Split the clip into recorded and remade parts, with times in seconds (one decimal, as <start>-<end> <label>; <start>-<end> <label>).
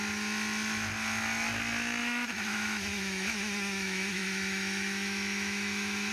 0.0-2.0 recorded; 2.0-6.1 remade